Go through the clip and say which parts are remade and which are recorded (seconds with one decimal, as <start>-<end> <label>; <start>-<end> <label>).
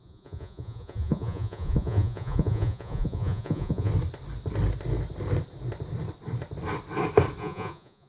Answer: 0.0-3.9 remade; 3.9-7.4 recorded; 7.4-8.1 remade